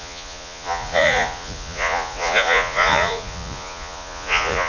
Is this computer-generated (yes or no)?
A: yes